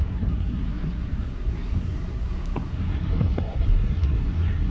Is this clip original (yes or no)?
no